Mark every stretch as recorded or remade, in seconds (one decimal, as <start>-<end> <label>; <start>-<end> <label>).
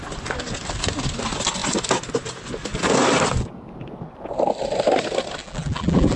0.0-5.4 recorded; 5.4-6.2 remade